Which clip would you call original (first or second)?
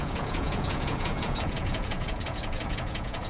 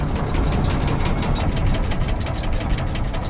second